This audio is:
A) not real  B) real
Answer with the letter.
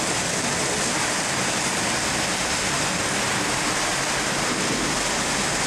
B